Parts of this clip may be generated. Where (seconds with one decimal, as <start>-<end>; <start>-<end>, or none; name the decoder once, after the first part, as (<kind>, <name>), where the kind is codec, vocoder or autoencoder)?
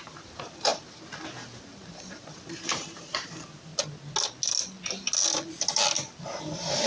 0.0-3.7 (vocoder, BigVGAN v2); 6.4-6.9